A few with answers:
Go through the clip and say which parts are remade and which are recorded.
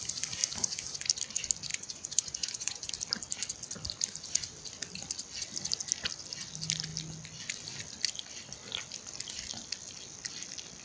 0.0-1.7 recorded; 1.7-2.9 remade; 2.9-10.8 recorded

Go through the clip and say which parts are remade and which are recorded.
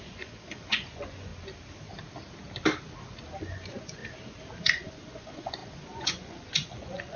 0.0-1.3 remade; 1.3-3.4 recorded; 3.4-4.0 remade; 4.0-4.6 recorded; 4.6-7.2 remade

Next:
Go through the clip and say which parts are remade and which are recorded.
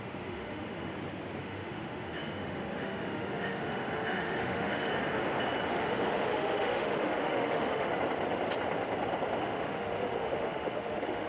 0.0-0.9 remade; 0.9-1.4 recorded; 1.4-4.9 remade; 4.9-5.7 recorded; 5.7-7.9 remade; 7.9-9.4 recorded; 9.4-11.3 remade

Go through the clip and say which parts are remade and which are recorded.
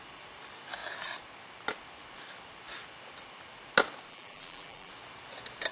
0.0-4.1 recorded; 4.1-4.9 remade; 4.9-5.7 recorded